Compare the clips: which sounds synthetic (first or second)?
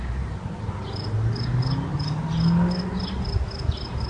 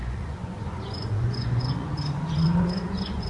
second